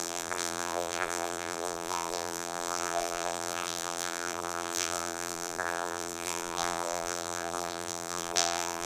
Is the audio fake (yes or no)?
yes